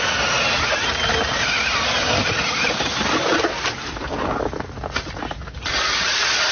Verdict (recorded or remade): recorded